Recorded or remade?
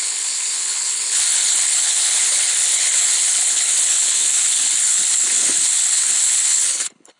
remade